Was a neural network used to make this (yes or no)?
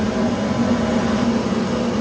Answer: no